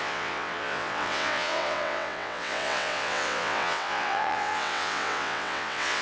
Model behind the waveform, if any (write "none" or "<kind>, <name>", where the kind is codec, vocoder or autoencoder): vocoder, WaveNeXt